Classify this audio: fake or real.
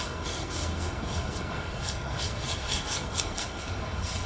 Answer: fake